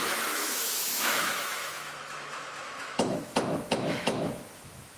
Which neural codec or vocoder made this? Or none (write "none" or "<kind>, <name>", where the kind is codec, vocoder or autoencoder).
autoencoder, DAC-VAE